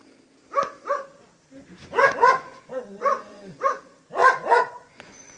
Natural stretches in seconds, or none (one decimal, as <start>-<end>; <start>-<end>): 0.0-2.0; 3.4-4.2